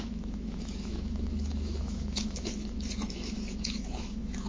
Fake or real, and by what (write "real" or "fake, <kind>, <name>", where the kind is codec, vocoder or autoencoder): fake, autoencoder, DAC-VAE